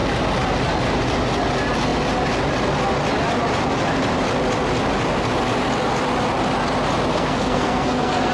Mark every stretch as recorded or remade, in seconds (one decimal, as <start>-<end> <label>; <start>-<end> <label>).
0.0-7.1 recorded; 7.1-8.3 remade